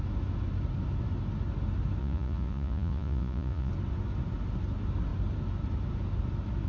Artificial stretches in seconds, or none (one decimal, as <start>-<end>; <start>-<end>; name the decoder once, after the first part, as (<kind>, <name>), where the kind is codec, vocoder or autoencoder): 2.0-3.7 (vocoder, Vocos)